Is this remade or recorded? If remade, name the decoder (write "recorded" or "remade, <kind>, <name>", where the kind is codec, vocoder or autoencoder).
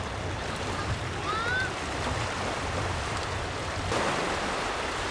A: recorded